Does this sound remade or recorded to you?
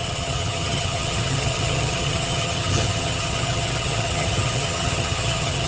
remade